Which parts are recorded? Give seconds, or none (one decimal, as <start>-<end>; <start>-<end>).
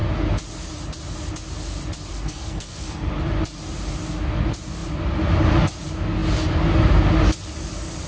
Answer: 0.0-2.1; 3.1-8.1